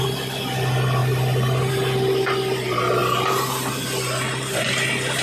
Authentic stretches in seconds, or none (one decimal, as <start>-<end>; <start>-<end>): 0.0-5.2